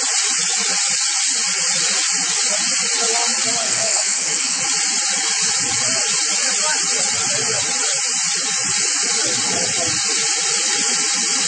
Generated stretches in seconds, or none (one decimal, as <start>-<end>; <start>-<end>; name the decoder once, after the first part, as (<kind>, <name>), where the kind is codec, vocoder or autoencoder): 3.6-4.6 (codec, SNAC)